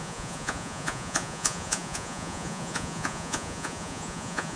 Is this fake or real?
fake